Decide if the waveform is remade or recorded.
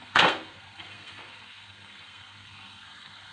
remade